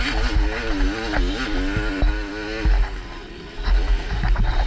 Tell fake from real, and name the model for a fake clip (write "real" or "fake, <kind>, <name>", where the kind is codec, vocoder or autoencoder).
real